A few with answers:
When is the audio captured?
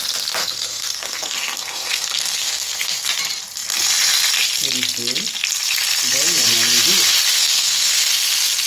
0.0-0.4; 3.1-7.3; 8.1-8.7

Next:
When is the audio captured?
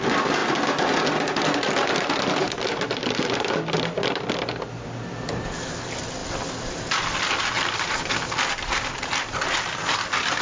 0.0-10.4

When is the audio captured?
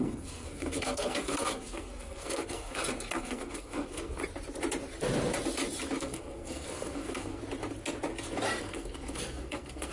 4.2-6.0; 7.4-8.6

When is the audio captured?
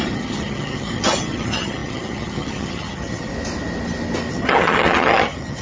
3.3-4.3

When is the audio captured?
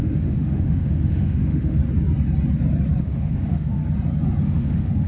1.8-3.0; 3.8-4.4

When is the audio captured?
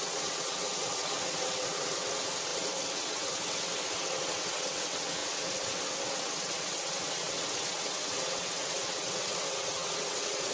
none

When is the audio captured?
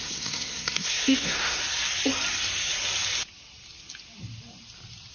1.6-5.1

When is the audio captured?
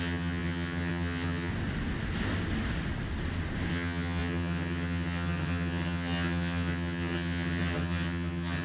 1.5-3.7